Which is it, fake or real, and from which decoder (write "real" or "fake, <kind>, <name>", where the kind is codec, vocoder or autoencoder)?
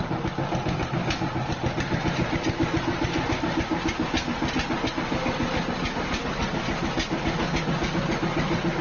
real